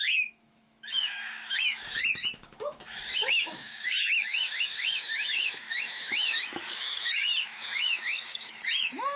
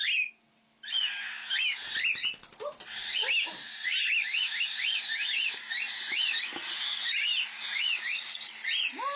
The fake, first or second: first